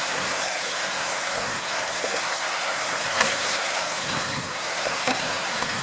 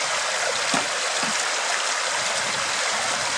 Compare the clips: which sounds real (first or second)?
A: second